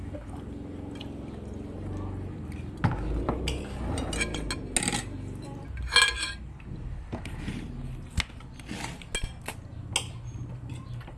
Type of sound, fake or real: real